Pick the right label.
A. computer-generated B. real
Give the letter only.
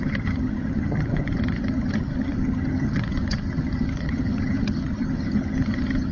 A